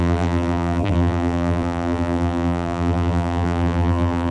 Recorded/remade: remade